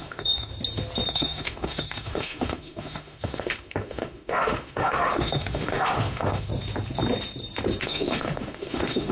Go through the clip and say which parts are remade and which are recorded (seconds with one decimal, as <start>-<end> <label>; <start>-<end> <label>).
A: 0.0-0.5 remade; 0.5-1.1 recorded; 1.1-6.5 remade; 6.5-7.8 recorded; 7.8-9.1 remade